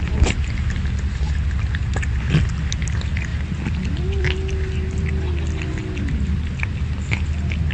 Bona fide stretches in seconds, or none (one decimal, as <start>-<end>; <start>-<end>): 0.0-7.7